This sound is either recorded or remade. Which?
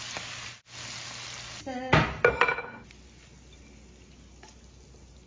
recorded